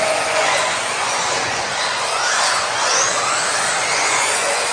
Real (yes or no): no